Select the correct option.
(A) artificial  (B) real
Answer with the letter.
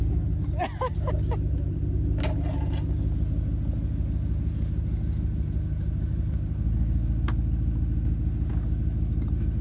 B